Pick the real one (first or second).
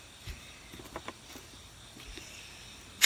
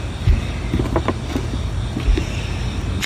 second